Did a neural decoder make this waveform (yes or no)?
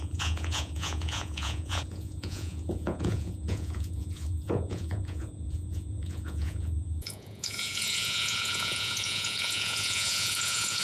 yes